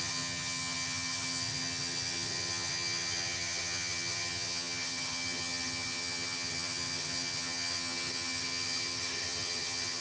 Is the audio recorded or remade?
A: remade